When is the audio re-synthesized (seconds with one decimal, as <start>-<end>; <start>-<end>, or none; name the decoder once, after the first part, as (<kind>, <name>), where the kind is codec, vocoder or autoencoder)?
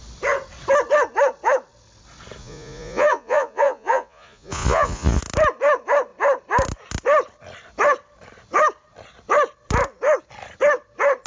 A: 2.4-5.2 (vocoder, Vocos)